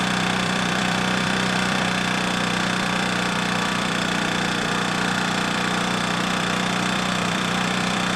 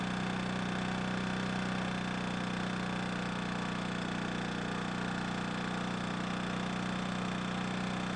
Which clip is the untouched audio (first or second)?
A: second